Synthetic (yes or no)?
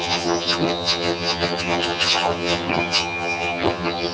yes